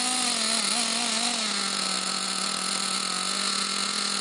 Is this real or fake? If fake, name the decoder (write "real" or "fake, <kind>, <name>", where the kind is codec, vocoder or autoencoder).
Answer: real